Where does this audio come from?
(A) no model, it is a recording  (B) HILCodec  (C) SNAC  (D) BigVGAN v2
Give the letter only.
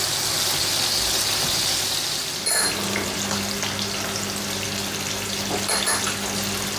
A